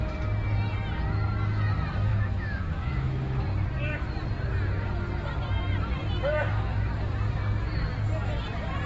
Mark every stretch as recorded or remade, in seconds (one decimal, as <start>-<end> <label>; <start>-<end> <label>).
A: 0.0-2.1 recorded; 2.1-3.4 remade; 3.4-8.9 recorded